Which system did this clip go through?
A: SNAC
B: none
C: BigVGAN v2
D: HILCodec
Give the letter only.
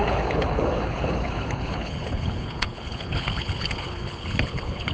D